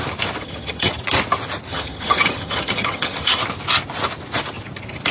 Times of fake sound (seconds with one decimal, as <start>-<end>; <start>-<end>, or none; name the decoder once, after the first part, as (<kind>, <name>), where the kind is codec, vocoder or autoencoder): 0.4-0.9 (vocoder, HiFi-GAN); 1.7-3.4